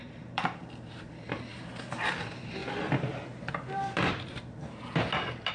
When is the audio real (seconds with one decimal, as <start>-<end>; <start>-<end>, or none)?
none